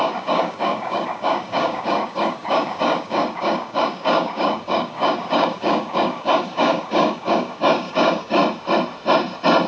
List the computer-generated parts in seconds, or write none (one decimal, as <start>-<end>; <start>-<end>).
0.0-8.4